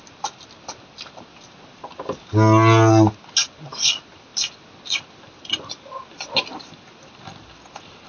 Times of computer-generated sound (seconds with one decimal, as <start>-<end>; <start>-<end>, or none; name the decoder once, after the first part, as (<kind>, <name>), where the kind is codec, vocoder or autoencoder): none